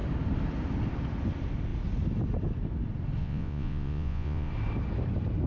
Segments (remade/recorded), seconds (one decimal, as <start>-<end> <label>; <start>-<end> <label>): 0.0-3.2 recorded; 3.2-4.5 remade; 4.5-5.5 recorded

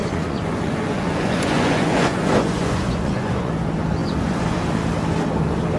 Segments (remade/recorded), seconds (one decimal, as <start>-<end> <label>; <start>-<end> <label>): 0.0-3.5 remade; 3.5-4.0 recorded; 4.0-4.6 remade; 4.6-5.8 recorded

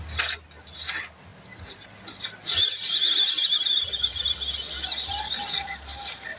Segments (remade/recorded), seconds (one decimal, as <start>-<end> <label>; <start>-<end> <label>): 0.0-6.4 recorded